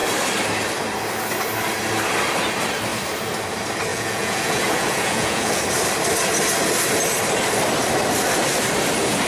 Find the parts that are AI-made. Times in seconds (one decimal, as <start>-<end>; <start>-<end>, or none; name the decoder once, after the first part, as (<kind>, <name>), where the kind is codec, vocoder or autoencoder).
3.9-5.6 (vocoder, Vocos)